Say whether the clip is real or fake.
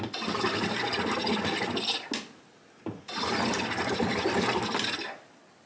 real